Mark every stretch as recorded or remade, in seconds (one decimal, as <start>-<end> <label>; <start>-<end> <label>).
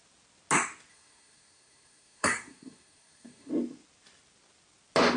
0.0-0.9 recorded; 0.9-3.5 remade; 3.5-5.2 recorded